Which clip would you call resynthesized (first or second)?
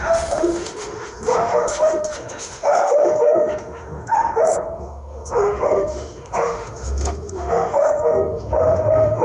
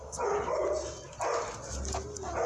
first